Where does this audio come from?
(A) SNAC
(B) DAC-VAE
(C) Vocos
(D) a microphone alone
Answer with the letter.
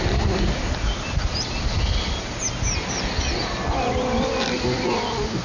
D